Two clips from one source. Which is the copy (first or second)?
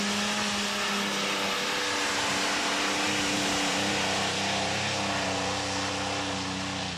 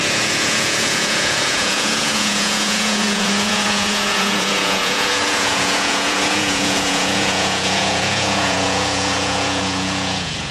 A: second